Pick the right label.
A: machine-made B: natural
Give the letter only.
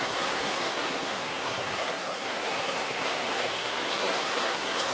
A